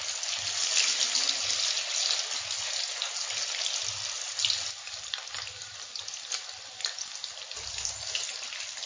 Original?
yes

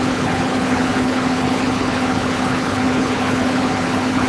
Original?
no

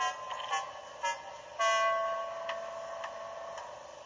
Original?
yes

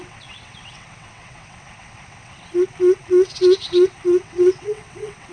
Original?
no